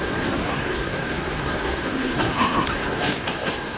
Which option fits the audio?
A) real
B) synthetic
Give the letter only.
B